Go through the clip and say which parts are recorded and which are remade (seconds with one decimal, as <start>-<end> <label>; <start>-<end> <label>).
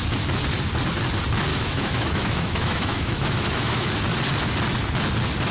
0.0-1.5 recorded; 1.5-3.9 remade; 3.9-5.5 recorded